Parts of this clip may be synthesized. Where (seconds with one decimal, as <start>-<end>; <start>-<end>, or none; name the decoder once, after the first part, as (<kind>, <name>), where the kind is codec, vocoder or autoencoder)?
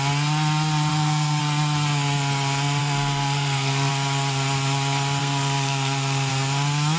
0.9-1.4 (codec, SNAC); 2.8-3.9; 5.2-6.3